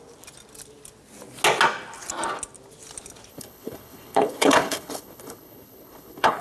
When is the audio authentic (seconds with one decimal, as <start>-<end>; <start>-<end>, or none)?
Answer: 0.0-3.3